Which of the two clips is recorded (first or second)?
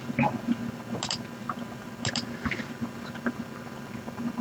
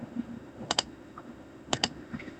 first